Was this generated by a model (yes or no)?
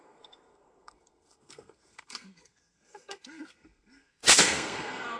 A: yes